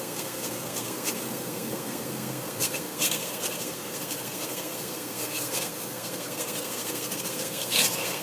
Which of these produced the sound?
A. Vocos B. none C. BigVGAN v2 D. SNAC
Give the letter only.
D